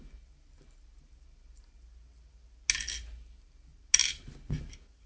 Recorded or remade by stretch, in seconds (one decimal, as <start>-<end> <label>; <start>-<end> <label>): 0.0-5.1 recorded

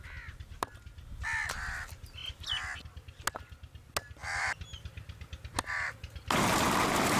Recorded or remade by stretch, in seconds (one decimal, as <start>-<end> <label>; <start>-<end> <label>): 0.0-7.2 recorded

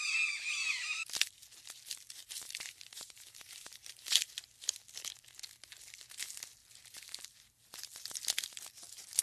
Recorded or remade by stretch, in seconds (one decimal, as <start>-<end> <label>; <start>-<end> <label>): 0.0-2.2 recorded; 2.2-4.3 remade; 4.3-6.6 recorded; 6.6-7.6 remade; 7.6-9.2 recorded

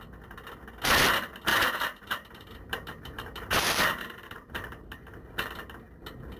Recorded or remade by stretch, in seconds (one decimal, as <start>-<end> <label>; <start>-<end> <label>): 0.0-1.5 recorded; 1.5-5.3 remade; 5.3-6.4 recorded

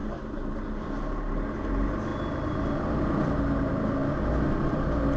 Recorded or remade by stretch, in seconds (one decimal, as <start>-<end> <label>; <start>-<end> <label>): 0.0-2.1 recorded; 2.1-3.3 remade; 3.3-5.2 recorded

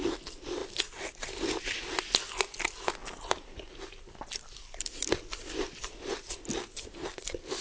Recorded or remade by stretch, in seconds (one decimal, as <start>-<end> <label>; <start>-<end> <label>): 0.0-0.6 recorded; 0.6-1.6 remade; 1.6-3.0 recorded; 3.0-6.5 remade; 6.5-7.6 recorded

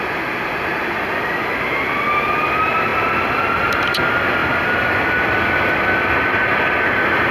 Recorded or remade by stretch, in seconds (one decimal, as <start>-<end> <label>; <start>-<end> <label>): 0.0-7.3 recorded

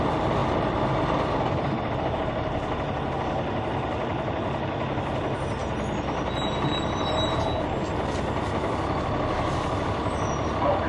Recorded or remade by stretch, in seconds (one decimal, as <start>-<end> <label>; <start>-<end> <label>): 0.0-10.9 recorded